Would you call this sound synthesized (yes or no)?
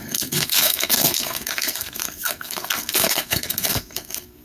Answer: yes